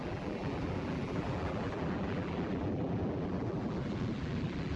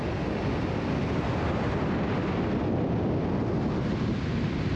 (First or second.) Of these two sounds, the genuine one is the second